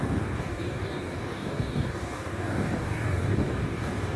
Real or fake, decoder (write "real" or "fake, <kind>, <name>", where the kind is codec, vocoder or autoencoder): fake, codec, DAC